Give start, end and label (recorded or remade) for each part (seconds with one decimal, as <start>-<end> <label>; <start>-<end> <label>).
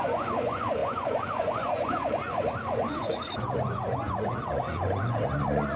0.0-5.8 remade